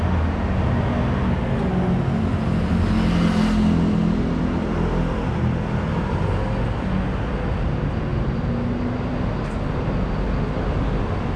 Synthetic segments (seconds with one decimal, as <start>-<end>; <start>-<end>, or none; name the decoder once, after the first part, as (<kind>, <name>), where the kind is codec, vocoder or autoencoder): none